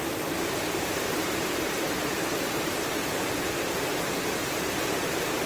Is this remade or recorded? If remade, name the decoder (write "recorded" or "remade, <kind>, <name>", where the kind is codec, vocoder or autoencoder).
remade, vocoder, BigVGAN v2